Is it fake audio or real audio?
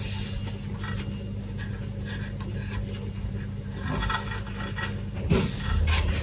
real